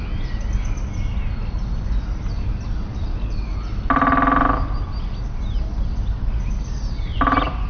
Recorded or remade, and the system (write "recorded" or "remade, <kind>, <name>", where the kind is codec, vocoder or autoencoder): recorded